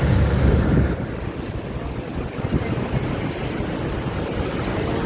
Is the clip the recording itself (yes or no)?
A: yes